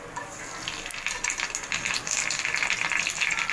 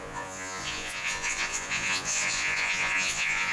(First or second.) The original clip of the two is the first